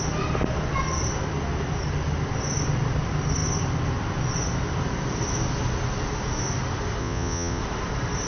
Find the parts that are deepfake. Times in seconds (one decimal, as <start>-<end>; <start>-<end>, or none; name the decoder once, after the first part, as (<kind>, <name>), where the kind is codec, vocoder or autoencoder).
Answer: 7.0-7.6 (vocoder, Vocos)